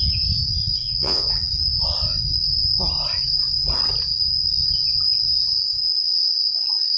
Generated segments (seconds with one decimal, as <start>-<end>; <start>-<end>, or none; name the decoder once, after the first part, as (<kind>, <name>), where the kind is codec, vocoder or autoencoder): 0.8-1.5 (vocoder, Vocos); 5.8-6.3